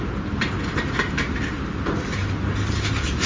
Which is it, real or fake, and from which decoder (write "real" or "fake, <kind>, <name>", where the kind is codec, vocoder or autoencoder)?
real